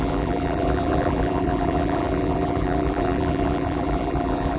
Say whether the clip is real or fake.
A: fake